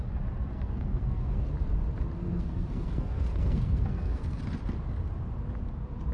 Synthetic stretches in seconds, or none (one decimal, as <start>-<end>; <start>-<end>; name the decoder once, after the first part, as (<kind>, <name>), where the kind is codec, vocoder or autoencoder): 0.5-1.5 (codec, SNAC); 2.2-4.4